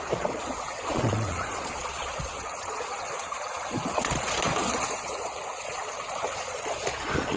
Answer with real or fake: fake